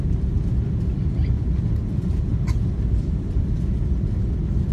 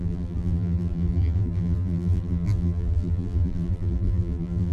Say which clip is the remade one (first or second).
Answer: second